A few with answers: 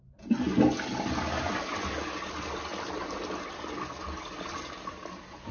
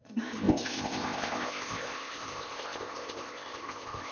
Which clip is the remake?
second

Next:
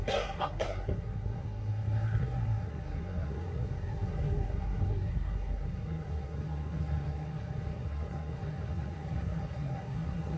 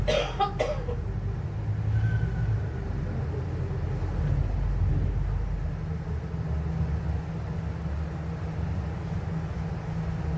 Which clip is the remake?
first